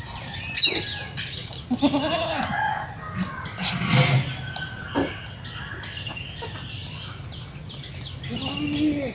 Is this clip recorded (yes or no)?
yes